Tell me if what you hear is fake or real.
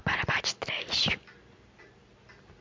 real